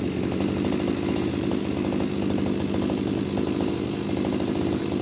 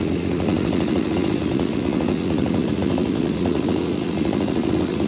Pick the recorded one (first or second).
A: first